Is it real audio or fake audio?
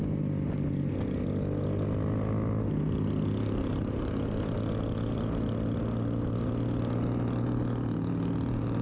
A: real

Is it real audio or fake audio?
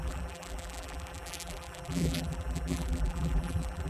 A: fake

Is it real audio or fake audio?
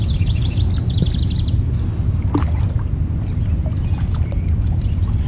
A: real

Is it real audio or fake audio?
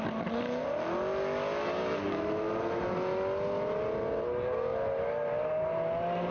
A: real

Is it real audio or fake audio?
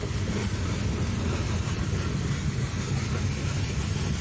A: real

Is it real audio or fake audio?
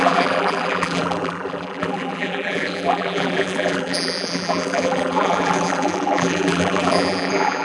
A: fake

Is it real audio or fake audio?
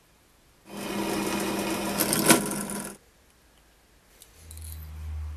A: real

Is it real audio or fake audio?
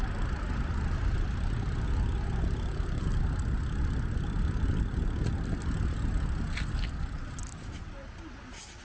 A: real